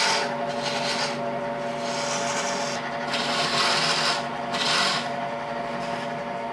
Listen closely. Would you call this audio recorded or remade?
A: recorded